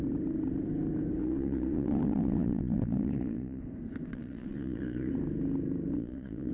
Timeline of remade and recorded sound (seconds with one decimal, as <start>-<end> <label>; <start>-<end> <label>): 0.0-1.2 recorded; 1.2-3.6 remade; 3.6-4.1 recorded; 4.1-5.1 remade; 5.1-5.9 recorded; 5.9-6.5 remade